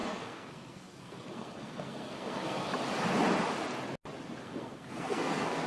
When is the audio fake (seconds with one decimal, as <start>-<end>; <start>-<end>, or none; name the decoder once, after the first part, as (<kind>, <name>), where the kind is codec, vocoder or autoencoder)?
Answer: 0.0-2.7 (codec, SNAC); 4.4-5.7